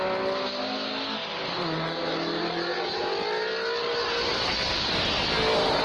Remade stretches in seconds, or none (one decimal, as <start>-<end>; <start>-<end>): none